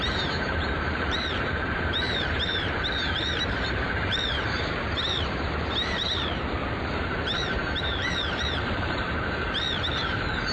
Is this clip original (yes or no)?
no